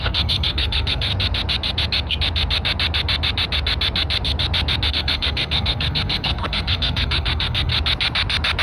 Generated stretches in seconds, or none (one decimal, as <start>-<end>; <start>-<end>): 0.0-1.1; 4.9-7.7